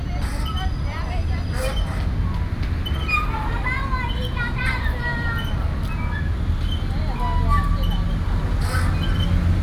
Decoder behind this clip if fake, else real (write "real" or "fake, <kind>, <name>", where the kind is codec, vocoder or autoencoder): real